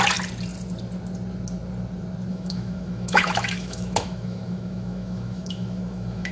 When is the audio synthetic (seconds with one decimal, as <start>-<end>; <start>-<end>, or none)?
2.3-6.3